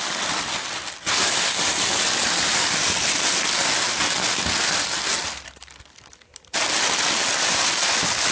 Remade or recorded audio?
recorded